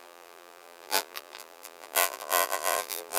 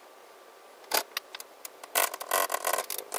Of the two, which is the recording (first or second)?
second